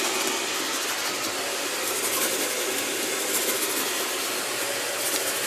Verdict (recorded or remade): recorded